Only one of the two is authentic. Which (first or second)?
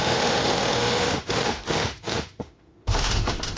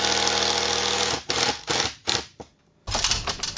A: second